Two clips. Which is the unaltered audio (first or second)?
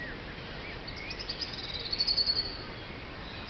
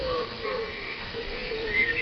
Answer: first